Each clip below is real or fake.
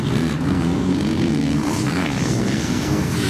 fake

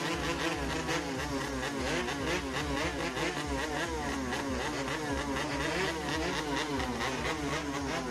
real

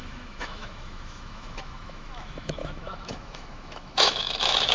fake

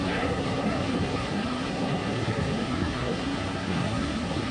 fake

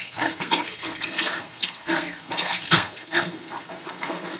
fake